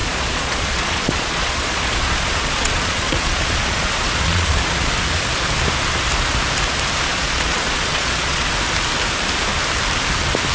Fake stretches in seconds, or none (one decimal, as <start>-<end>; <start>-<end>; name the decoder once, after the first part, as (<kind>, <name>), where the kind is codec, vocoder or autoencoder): 0.0-4.9 (vocoder, Vocos); 7.1-8.5